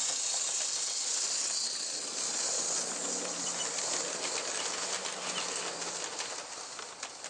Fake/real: real